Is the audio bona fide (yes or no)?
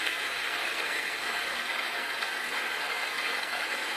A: no